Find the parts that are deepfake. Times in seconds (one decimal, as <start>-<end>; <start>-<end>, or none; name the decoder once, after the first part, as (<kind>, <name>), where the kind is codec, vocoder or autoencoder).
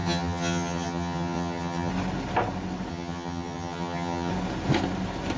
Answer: 0.0-1.9 (vocoder, HiFi-GAN); 2.9-4.3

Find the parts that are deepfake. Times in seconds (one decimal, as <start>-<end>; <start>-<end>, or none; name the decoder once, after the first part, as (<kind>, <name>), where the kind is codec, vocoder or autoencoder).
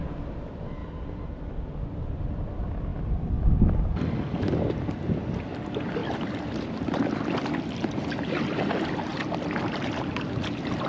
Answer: 6.0-7.6 (vocoder, BigVGAN v2); 9.1-9.6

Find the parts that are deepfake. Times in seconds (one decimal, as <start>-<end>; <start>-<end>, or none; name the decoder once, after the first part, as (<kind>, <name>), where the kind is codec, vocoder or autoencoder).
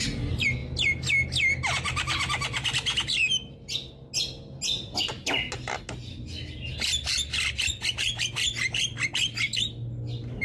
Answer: none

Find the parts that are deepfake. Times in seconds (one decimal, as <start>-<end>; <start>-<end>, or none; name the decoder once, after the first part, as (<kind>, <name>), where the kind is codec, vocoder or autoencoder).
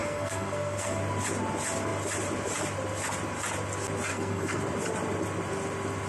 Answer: 0.0-1.0 (codec, SNAC); 4.1-4.6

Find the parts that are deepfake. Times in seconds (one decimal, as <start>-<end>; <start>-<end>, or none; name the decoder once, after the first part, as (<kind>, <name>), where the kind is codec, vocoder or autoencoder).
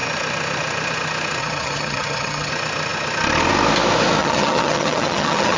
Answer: 1.4-2.5 (vocoder, HiFi-GAN); 4.2-5.6